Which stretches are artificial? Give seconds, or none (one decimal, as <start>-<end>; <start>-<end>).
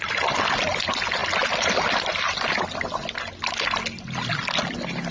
none